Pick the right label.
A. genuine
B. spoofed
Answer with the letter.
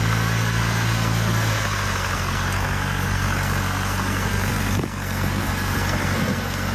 B